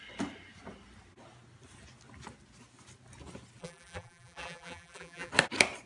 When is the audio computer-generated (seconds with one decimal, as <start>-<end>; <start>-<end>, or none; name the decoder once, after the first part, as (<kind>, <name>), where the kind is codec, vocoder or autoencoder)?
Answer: 3.6-5.3 (vocoder, BigVGAN v2)